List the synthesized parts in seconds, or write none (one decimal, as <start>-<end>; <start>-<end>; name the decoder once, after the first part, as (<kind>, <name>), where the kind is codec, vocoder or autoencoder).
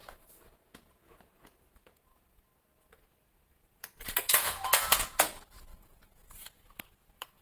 0.0-7.4 (vocoder, Vocos)